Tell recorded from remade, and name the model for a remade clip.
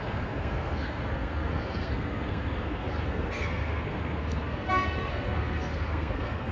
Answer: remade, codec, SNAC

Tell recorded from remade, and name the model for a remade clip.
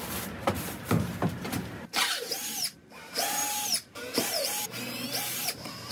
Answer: remade, vocoder, BigVGAN v2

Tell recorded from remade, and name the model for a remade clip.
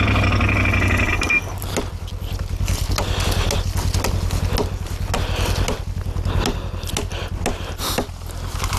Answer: recorded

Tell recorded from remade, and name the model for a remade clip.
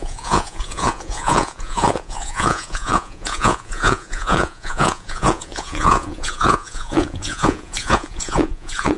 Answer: remade, vocoder, Vocos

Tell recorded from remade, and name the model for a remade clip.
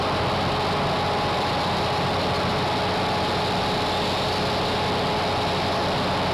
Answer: recorded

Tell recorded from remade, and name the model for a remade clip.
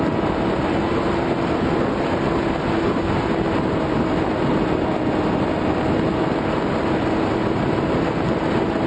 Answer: recorded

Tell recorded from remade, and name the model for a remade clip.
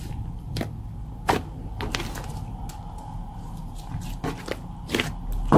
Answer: recorded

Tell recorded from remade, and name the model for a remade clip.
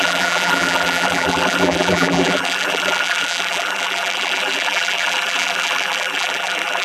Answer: remade, vocoder, BigVGAN v2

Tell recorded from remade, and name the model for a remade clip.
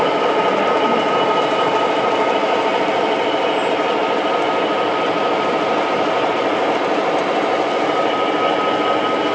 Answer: recorded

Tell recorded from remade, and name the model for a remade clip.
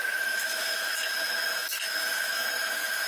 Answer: remade, autoencoder, DAC-VAE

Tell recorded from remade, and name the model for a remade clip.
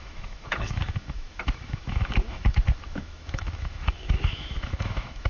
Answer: remade, autoencoder, DAC-VAE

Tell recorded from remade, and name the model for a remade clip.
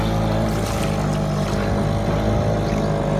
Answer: recorded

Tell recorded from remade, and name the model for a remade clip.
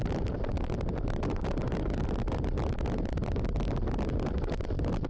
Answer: recorded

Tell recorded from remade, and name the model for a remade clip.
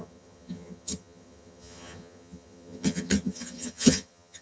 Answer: remade, vocoder, HiFi-GAN